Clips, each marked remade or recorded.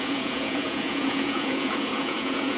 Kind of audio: remade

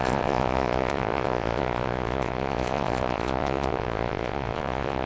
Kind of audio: remade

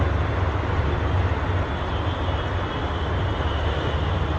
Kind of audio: recorded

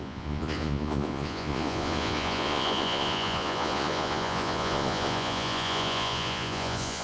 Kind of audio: remade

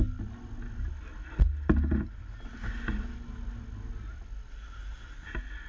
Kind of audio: recorded